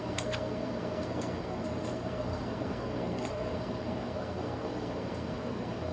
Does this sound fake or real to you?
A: fake